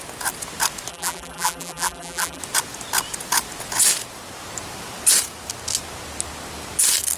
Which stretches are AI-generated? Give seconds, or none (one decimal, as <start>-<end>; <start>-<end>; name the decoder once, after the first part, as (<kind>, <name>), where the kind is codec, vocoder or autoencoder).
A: 0.9-2.4 (vocoder, BigVGAN v2)

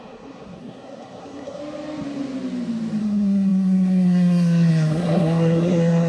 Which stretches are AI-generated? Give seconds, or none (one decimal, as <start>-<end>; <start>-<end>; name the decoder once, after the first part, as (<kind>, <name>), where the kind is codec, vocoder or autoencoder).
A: 0.0-1.6 (codec, SNAC); 3.0-6.1

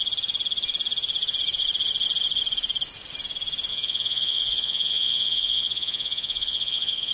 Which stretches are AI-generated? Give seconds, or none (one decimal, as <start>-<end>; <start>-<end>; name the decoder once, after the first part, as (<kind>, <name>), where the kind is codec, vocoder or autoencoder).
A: 3.7-7.1 (vocoder, Vocos)

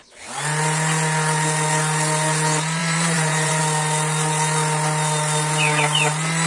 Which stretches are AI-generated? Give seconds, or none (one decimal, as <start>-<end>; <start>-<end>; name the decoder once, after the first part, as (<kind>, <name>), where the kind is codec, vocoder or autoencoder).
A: 2.8-3.6 (vocoder, BigVGAN v2)

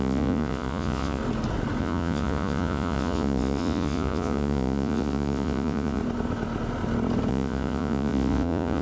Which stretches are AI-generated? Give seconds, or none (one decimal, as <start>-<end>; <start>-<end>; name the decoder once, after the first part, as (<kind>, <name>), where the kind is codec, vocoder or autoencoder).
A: 0.0-1.2 (vocoder, Vocos); 1.8-6.0; 7.3-8.8

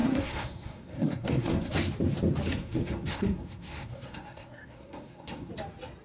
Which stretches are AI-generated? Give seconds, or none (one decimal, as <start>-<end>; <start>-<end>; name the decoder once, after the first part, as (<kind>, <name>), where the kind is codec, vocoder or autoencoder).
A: 0.0-1.7 (codec, SNAC); 2.5-5.5

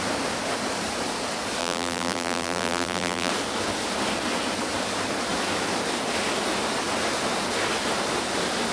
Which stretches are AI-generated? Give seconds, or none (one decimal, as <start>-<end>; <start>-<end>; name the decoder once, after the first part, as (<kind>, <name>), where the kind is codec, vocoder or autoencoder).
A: 1.6-3.3 (vocoder, BigVGAN v2)

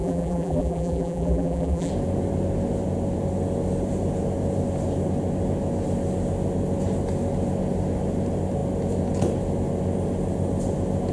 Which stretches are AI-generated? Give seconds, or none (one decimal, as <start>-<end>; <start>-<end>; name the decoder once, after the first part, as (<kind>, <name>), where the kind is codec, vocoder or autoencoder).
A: 0.0-1.9 (vocoder, BigVGAN v2)